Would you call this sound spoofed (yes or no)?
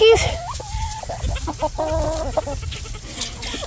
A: no